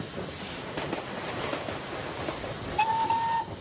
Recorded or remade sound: recorded